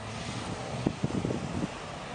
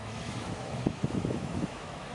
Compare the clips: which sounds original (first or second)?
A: first